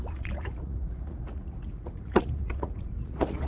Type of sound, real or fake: fake